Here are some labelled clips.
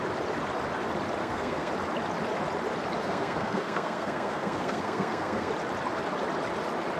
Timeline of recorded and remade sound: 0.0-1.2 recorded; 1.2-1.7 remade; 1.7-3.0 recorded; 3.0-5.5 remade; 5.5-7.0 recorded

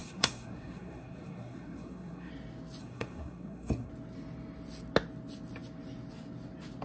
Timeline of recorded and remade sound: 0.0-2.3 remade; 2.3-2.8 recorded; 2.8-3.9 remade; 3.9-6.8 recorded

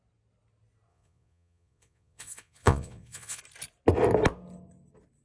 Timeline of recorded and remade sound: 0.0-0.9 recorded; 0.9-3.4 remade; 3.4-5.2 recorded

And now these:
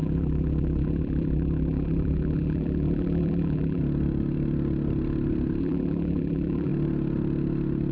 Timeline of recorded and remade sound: 0.0-3.8 remade; 3.8-5.6 recorded; 5.6-6.7 remade; 6.7-7.9 recorded

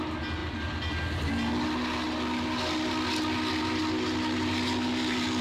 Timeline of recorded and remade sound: 0.0-5.4 recorded

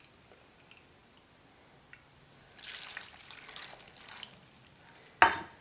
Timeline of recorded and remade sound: 0.0-5.6 recorded

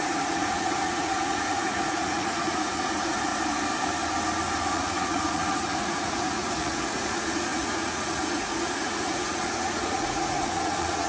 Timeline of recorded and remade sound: 0.0-3.3 remade; 3.3-4.7 recorded; 4.7-11.1 remade

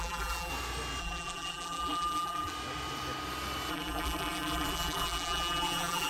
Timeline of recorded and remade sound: 0.0-0.5 remade; 0.5-1.0 recorded; 1.0-2.5 remade; 2.5-3.7 recorded; 3.7-6.1 remade